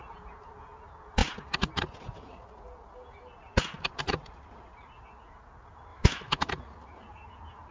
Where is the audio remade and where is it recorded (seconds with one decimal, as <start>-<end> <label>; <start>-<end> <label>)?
0.0-5.9 recorded; 5.9-6.5 remade; 6.5-7.7 recorded